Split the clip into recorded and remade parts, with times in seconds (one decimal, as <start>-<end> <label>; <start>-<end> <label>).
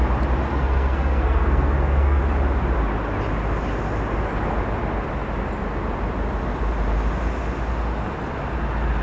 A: 0.0-0.5 recorded; 0.5-2.2 remade; 2.2-9.0 recorded